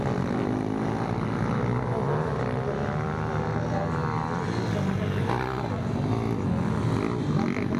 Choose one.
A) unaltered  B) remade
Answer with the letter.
A